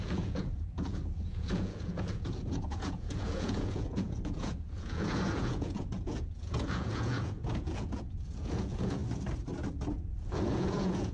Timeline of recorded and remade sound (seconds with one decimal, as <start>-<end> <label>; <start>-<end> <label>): 0.0-9.0 remade; 9.0-9.7 recorded; 9.7-11.1 remade